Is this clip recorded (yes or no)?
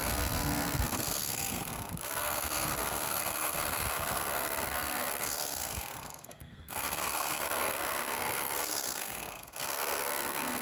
no